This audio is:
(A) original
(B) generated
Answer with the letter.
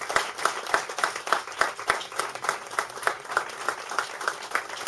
A